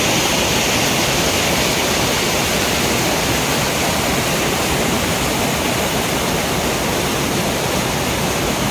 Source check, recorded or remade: recorded